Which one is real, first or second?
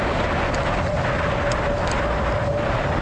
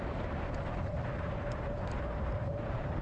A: first